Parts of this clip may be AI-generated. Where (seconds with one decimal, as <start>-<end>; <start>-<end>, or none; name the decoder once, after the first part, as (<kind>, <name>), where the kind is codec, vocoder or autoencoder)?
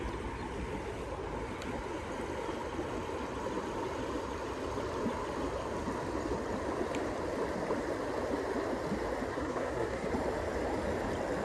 9.3-10.1 (codec, SNAC)